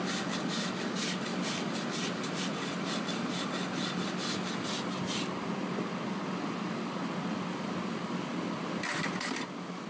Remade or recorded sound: recorded